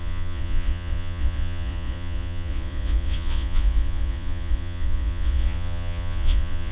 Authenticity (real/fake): fake